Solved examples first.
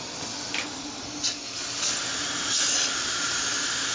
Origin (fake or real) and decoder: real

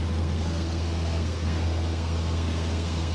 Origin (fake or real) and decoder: fake, codec, SNAC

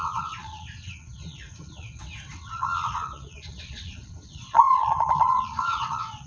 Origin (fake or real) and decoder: fake, vocoder, WaveNeXt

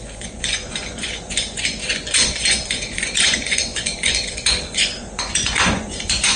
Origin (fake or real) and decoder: fake, vocoder, Vocos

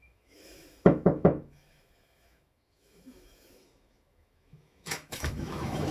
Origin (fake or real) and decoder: fake, autoencoder, DAC-VAE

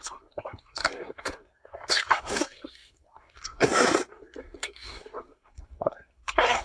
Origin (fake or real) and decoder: fake, codec, SNAC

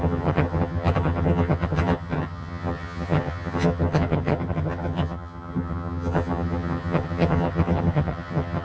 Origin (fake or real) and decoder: fake, vocoder, HiFi-GAN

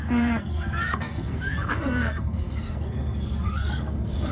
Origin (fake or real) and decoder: fake, codec, SNAC